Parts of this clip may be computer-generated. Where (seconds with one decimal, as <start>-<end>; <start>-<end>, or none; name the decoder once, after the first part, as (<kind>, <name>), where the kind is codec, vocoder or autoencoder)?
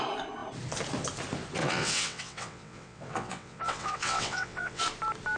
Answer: 1.6-4.8 (vocoder, WaveNeXt)